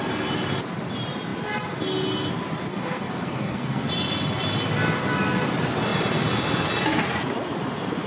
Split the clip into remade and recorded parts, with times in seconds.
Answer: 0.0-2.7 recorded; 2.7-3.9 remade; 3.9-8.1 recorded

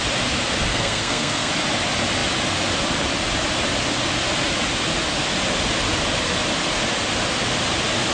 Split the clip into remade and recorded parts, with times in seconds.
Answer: 0.0-0.7 recorded; 0.7-1.5 remade; 1.5-8.1 recorded

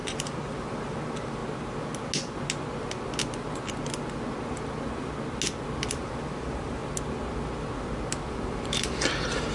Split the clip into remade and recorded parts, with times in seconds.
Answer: 0.0-1.4 remade; 1.4-5.9 recorded; 5.9-6.8 remade; 6.8-8.3 recorded; 8.3-9.5 remade

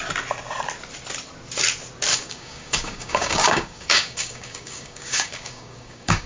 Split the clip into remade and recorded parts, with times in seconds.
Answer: 0.0-2.1 recorded; 2.1-6.3 remade

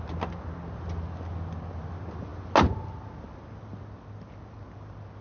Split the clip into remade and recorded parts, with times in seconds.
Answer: 0.0-5.2 recorded

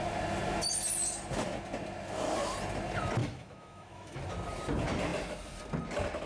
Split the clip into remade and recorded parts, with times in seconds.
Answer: 0.0-3.2 recorded; 3.2-4.2 remade; 4.2-6.3 recorded